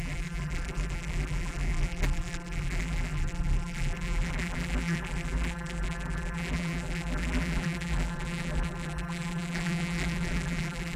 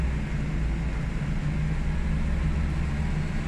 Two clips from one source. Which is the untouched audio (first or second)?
second